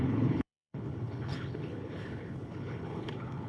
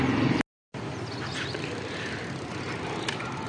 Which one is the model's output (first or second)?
first